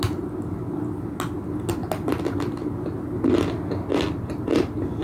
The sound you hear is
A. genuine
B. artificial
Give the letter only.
A